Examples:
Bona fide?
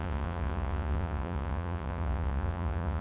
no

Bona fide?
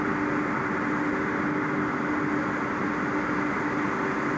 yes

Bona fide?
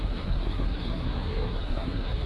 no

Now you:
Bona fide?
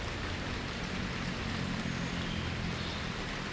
yes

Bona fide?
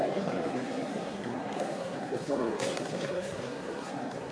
no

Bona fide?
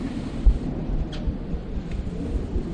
yes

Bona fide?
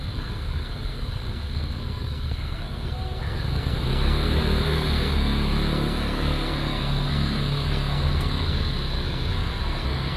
no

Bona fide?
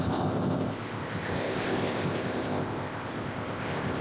no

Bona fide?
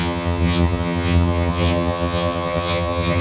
no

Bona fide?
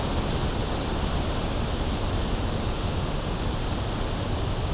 yes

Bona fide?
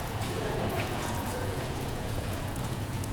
no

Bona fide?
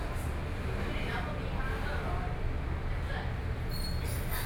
yes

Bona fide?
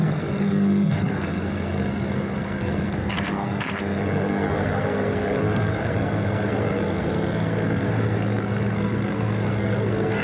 no